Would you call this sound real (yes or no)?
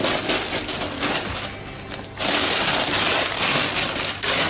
yes